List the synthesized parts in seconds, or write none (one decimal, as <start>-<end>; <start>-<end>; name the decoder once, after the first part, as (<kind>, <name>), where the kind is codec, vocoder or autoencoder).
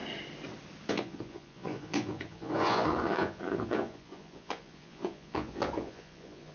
0.9-6.5 (vocoder, Vocos)